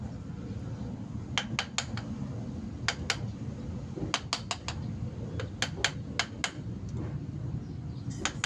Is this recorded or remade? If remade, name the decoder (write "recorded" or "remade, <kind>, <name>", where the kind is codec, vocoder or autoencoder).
recorded